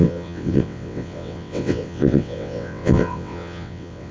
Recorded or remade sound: remade